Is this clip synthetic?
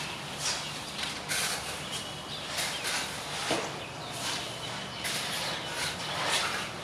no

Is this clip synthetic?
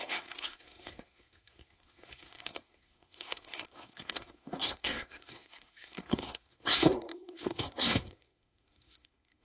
yes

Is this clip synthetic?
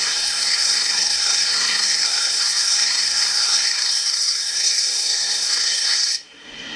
yes